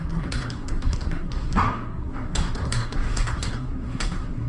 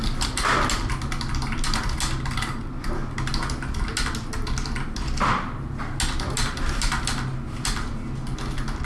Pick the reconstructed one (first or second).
first